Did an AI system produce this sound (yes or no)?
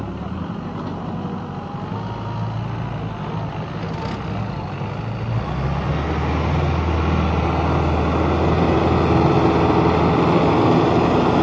no